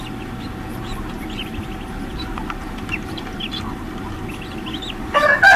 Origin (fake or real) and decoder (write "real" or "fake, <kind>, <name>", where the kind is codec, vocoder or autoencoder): real